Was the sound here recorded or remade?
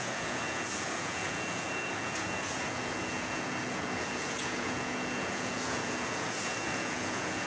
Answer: remade